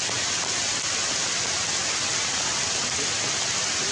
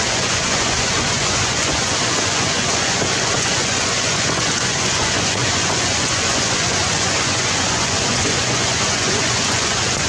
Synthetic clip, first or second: second